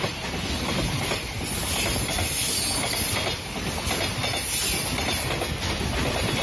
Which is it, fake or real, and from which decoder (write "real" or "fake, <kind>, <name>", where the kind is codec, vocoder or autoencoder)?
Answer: real